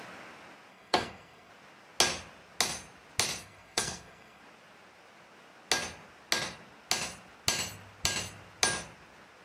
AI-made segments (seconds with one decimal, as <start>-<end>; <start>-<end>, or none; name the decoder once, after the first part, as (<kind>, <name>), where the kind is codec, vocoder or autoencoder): 0.7-1.5 (codec, SNAC); 3.4-4.4